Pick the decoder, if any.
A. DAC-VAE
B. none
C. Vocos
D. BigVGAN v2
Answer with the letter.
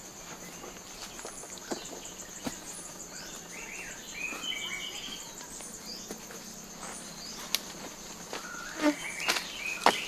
B